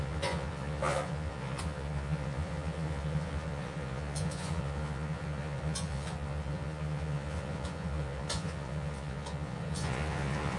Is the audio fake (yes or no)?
yes